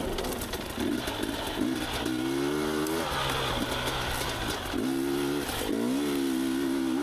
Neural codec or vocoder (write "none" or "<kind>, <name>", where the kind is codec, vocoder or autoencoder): none